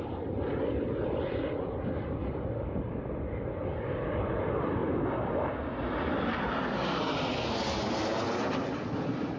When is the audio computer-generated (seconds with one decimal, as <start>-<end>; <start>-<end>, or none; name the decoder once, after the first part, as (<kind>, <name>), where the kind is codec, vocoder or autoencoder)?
none